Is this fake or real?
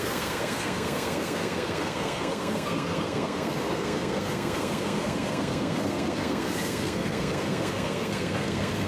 fake